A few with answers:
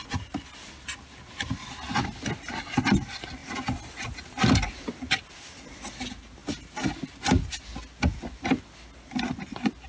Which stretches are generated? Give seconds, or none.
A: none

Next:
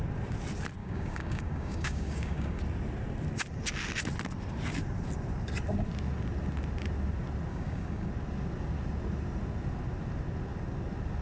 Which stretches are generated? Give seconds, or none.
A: 0.8-2.6 (codec, DAC); 7.5-8.1

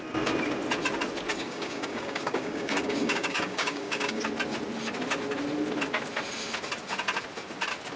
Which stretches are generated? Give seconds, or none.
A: 1.3-4.2 (codec, DAC)

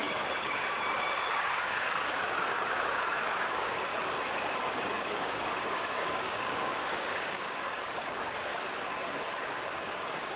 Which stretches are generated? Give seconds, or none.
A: 0.0-3.9 (codec, DAC); 4.7-8.5; 9.5-10.4

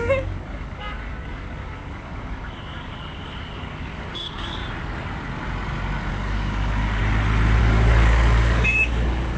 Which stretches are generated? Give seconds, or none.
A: 0.0-4.6 (codec, DAC); 6.1-7.0; 7.6-9.4

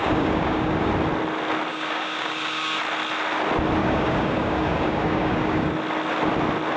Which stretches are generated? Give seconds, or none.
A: 0.0-0.9 (codec, DAC); 1.7-2.8; 3.8-5.7

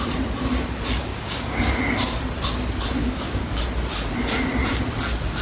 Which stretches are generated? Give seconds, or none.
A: 1.1-1.7 (codec, DAC); 3.0-3.6

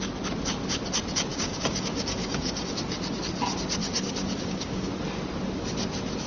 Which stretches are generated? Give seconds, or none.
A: 1.3-2.8 (codec, DAC); 3.8-4.9